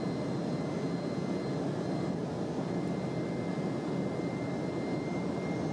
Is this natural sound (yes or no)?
yes